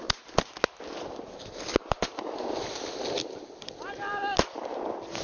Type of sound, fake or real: real